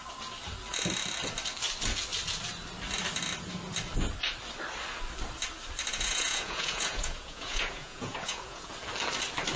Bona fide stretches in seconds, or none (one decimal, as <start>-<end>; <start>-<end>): 0.0-5.9; 8.7-9.6

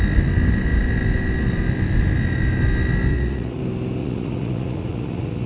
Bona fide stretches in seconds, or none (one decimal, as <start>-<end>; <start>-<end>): 0.0-3.1; 3.6-4.0

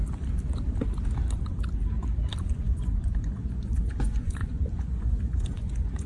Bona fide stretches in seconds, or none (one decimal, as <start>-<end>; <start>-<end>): 0.0-2.4